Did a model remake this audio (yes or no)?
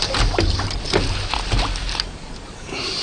no